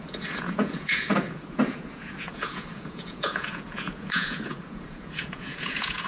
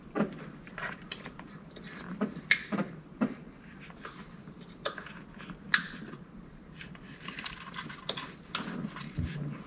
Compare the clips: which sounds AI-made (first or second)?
first